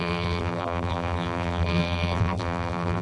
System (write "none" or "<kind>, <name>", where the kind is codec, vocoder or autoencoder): vocoder, BigVGAN v2